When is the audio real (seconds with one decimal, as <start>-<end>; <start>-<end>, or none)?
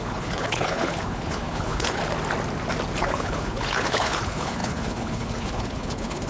2.0-3.0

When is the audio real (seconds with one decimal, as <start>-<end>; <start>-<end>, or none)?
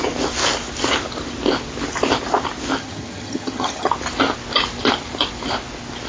0.0-2.8; 3.9-6.1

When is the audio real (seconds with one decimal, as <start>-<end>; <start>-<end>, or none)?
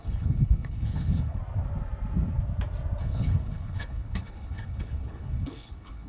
1.4-3.0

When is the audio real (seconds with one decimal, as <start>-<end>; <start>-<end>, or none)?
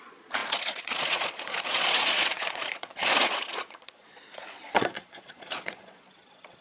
none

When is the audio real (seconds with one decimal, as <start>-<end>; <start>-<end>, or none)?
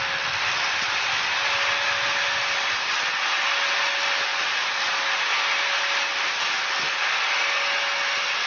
0.0-8.5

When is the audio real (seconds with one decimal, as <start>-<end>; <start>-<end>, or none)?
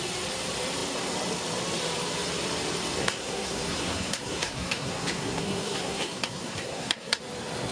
0.0-3.0; 7.2-7.7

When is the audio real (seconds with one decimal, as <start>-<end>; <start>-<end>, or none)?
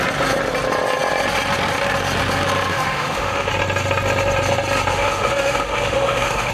0.0-2.7; 3.5-4.9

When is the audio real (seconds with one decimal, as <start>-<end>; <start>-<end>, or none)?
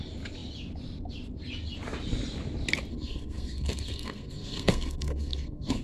0.0-2.9